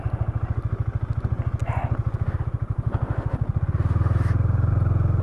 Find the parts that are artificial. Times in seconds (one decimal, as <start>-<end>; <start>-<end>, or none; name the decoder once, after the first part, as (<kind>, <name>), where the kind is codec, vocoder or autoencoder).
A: none